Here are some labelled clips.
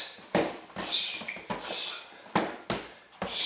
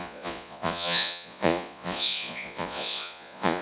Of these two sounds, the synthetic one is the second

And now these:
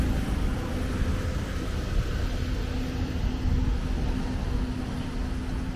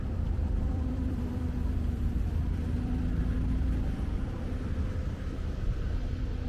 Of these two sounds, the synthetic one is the second